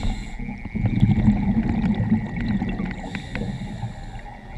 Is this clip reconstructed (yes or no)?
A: no